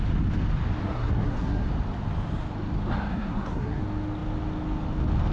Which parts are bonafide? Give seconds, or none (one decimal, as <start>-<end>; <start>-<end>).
0.0-0.8; 1.7-3.1; 3.8-5.3